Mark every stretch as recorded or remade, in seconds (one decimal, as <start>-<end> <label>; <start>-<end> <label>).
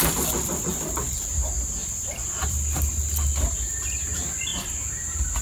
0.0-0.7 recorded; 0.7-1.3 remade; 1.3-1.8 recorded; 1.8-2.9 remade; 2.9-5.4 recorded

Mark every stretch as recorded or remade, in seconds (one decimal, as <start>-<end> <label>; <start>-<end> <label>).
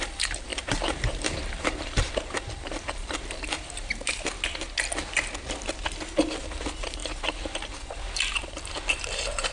0.0-3.9 remade; 3.9-6.4 recorded; 6.4-9.5 remade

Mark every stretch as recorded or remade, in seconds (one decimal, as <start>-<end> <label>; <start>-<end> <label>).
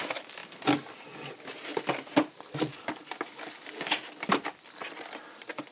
0.0-5.7 remade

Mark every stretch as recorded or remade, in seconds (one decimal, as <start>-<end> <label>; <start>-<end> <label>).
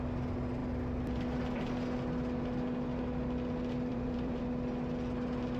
0.0-3.9 recorded; 3.9-4.4 remade; 4.4-5.6 recorded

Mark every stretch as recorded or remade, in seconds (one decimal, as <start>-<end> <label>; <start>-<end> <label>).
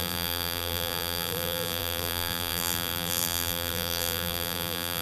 0.0-5.0 remade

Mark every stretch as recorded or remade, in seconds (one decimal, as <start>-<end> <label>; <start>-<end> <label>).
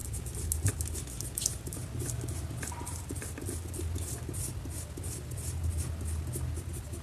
0.0-7.0 recorded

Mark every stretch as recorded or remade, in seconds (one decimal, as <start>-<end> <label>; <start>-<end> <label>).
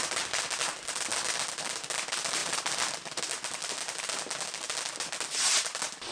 0.0-2.4 recorded; 2.4-3.2 remade; 3.2-6.1 recorded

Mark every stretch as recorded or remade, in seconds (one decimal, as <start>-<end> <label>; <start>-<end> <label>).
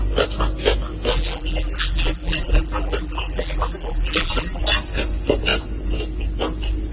0.0-1.1 recorded; 1.1-4.6 remade; 4.6-6.9 recorded